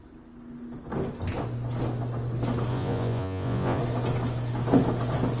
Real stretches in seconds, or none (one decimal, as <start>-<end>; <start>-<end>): 0.0-2.7; 3.8-5.4